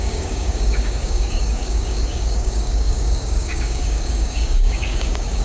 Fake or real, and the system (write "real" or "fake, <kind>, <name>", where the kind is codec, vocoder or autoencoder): fake, codec, DAC